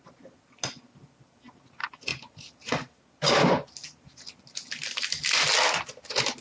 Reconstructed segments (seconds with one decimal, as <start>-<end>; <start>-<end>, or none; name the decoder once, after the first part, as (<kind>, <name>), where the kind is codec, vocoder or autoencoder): none